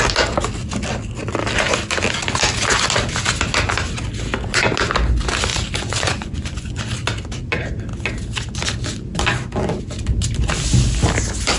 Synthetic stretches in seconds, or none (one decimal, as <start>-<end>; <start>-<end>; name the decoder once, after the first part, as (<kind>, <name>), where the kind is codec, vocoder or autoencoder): 5.5-6.8 (vocoder, Vocos)